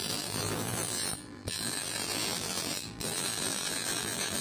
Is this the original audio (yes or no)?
no